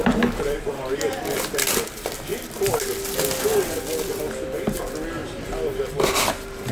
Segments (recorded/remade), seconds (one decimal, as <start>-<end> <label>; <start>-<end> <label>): 0.0-2.3 remade; 2.3-3.4 recorded; 3.4-5.2 remade; 5.2-6.7 recorded